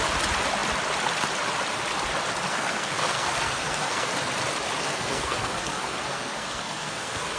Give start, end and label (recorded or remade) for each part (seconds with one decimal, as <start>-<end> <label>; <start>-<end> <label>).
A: 0.0-2.5 recorded; 2.5-4.1 remade; 4.1-4.8 recorded; 4.8-7.4 remade